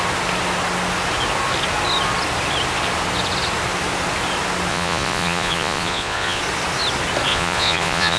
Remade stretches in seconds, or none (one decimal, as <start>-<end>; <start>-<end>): 4.7-6.4; 7.3-8.2